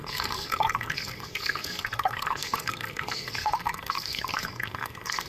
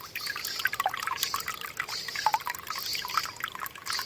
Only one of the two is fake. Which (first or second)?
first